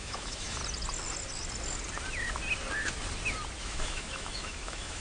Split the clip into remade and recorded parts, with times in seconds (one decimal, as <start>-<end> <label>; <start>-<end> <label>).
0.0-0.6 remade; 0.6-3.6 recorded; 3.6-5.0 remade